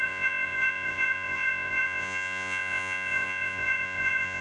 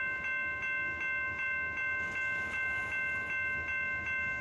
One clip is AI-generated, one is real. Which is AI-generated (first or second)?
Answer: first